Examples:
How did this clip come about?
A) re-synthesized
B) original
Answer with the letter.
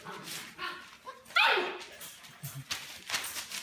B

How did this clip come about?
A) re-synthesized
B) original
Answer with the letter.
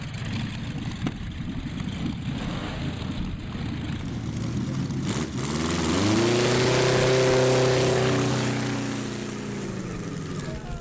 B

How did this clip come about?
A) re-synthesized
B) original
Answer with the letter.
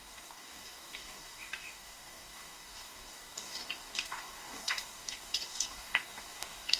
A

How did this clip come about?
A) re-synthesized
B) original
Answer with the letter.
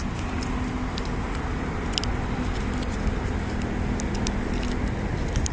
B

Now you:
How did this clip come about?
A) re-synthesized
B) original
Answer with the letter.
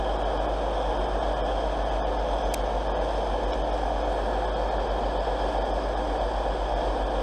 B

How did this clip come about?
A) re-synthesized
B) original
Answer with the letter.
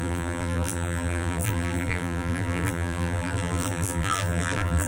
A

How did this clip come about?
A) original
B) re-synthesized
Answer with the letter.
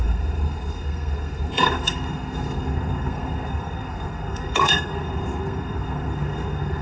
B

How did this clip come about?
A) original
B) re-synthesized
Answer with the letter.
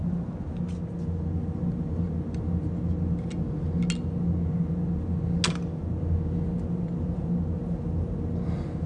A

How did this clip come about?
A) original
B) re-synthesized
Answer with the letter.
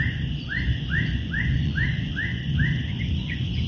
B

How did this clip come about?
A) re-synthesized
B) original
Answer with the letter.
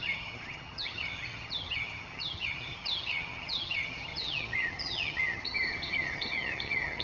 A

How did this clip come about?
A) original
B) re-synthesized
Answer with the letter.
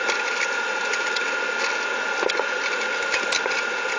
A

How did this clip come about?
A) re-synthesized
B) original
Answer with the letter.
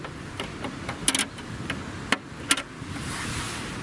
B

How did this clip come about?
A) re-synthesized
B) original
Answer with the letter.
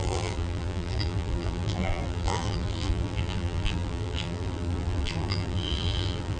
A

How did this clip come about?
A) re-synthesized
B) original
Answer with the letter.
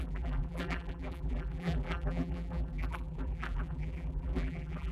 A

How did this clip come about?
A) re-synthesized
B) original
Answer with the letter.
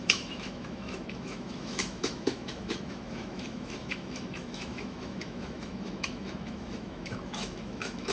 A